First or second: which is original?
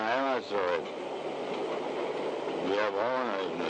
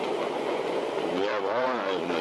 first